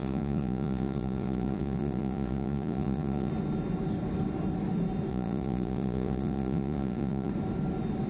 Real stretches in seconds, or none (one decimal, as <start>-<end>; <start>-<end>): 3.3-5.1; 7.3-8.1